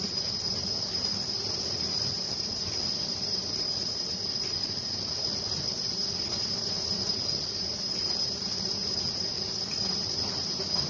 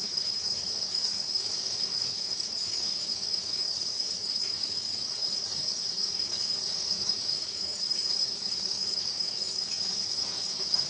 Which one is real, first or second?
first